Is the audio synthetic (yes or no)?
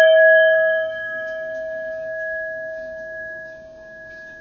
yes